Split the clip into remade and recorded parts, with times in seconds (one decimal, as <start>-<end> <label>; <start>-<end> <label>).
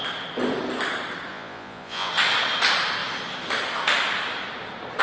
0.0-1.3 recorded; 1.3-2.1 remade; 2.1-5.0 recorded